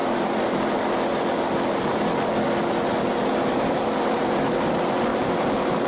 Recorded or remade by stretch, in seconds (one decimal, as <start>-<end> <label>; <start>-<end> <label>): 0.0-0.8 remade; 0.8-3.0 recorded; 3.0-4.3 remade; 4.3-5.1 recorded; 5.1-5.9 remade